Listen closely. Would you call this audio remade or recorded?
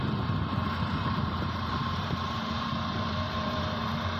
remade